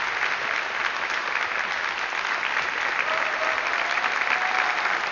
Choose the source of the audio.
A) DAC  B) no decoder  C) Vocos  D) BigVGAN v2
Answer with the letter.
B